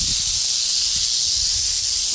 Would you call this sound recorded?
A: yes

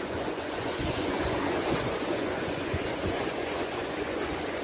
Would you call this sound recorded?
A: no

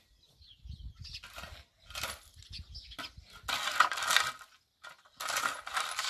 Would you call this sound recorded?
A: yes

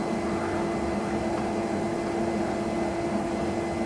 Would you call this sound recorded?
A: yes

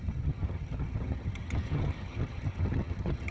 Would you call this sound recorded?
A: no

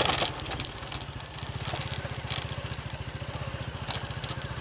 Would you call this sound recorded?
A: yes